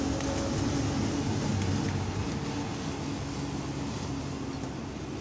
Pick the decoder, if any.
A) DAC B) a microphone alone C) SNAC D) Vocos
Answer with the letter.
B